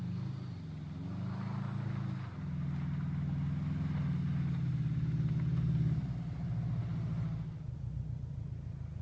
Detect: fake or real real